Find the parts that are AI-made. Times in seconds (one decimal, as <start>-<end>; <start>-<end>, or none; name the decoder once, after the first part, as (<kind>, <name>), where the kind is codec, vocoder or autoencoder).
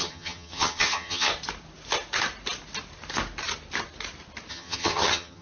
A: 0.0-1.3 (vocoder, HiFi-GAN); 4.5-5.4